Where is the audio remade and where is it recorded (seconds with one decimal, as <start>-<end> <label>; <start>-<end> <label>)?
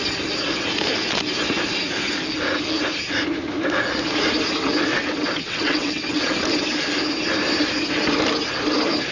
0.0-4.9 recorded; 4.9-6.3 remade; 6.3-9.1 recorded